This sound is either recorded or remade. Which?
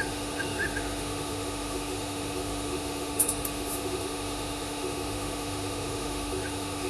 remade